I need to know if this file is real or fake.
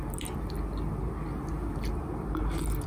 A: real